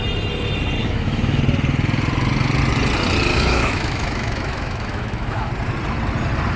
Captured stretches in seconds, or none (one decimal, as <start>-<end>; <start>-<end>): 0.0-0.8; 1.4-3.3; 5.5-6.6